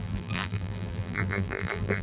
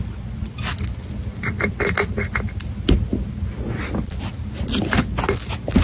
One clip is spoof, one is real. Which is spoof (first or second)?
first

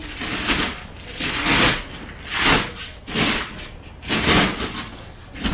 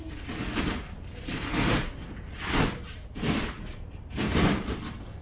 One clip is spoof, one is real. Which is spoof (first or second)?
second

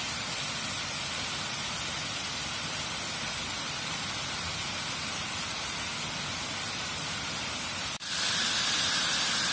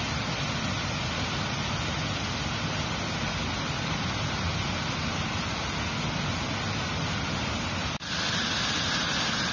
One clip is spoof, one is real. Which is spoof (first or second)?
first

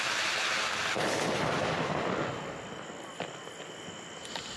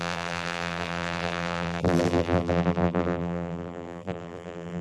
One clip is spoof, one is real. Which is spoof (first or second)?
second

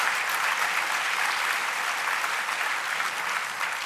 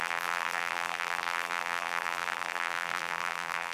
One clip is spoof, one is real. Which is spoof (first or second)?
second